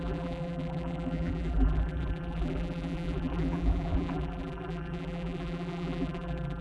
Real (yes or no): no